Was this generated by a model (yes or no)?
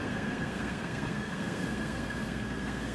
yes